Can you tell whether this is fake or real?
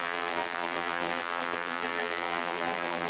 fake